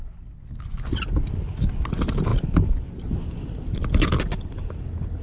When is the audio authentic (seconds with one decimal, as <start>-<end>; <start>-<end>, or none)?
0.0-5.2